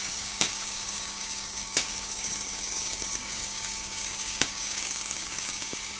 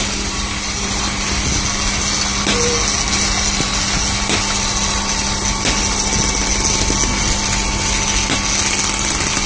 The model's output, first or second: first